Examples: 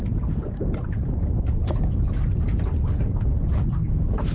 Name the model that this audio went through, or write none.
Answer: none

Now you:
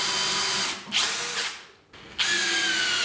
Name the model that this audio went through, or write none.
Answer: none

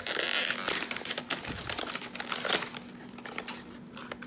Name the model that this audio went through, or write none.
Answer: none